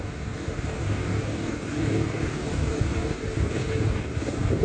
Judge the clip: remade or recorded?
remade